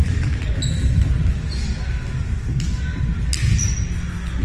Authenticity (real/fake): real